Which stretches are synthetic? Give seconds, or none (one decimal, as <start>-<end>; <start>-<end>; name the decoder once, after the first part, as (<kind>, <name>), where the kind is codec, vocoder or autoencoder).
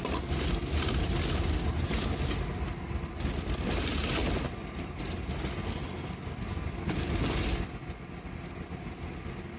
none